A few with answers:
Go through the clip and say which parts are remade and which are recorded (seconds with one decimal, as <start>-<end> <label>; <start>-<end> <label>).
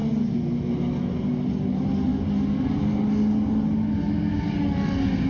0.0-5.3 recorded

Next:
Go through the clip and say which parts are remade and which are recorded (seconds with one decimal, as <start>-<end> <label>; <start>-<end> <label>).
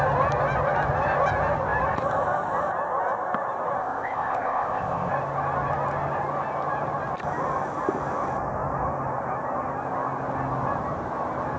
0.0-3.8 recorded; 3.8-5.1 remade; 5.1-11.6 recorded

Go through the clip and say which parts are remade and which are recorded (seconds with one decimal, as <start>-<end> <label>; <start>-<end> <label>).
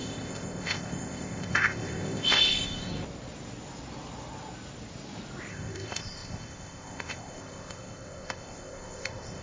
0.0-2.9 remade; 2.9-5.5 recorded; 5.5-9.4 remade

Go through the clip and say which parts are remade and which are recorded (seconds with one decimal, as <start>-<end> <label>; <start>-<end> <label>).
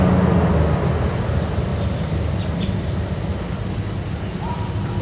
0.0-5.0 recorded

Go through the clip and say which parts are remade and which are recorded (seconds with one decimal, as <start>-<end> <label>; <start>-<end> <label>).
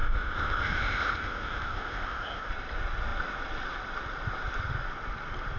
0.0-2.5 remade; 2.5-5.6 recorded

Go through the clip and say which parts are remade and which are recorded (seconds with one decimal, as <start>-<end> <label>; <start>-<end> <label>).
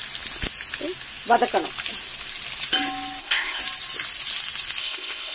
0.0-3.2 recorded; 3.2-3.6 remade; 3.6-4.8 recorded; 4.8-5.3 remade